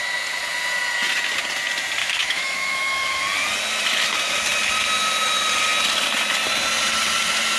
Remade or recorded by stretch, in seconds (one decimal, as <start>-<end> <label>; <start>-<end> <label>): 0.0-2.0 recorded; 2.0-3.2 remade; 3.2-7.6 recorded